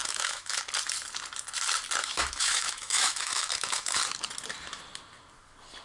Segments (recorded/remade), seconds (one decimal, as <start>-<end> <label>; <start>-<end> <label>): 0.0-0.6 remade; 0.6-2.0 recorded; 2.0-4.0 remade; 4.0-5.8 recorded